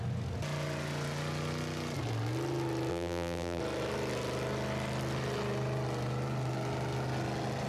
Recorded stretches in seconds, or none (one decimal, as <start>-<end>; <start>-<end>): 0.0-2.9; 3.6-7.7